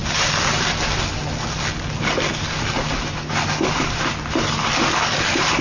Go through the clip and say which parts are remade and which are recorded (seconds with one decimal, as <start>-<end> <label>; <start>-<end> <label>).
0.0-5.6 recorded